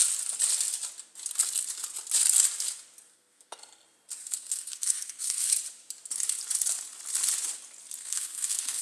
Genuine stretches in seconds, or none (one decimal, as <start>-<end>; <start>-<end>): 0.0-3.1; 3.6-4.2; 5.5-8.0